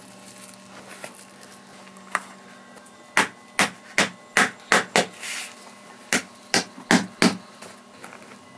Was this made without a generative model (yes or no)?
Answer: yes